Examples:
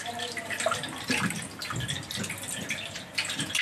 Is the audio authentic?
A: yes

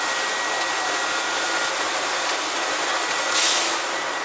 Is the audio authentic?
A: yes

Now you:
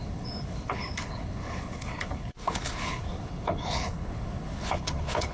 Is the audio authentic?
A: no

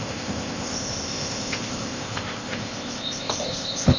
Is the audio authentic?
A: no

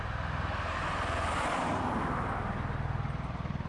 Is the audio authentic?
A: yes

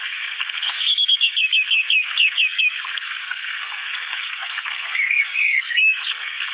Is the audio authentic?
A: no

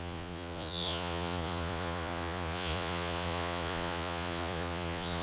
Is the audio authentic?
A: no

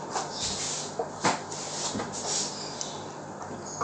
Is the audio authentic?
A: yes